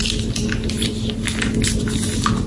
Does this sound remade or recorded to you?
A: recorded